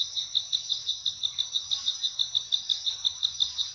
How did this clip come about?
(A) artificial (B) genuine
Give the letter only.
B